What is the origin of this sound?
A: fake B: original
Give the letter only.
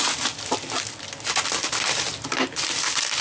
B